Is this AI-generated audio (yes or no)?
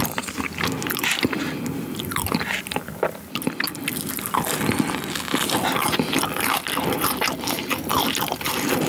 no